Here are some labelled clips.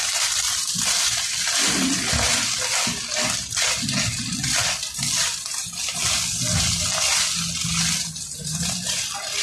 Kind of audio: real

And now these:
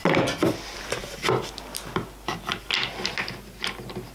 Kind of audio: real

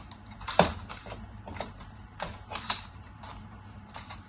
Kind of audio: fake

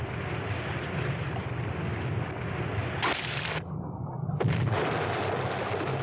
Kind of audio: real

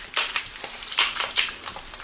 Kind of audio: fake